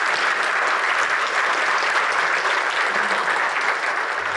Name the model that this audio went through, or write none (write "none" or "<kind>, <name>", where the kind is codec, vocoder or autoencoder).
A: none